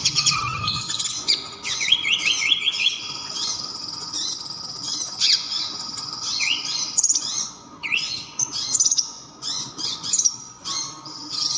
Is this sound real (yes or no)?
no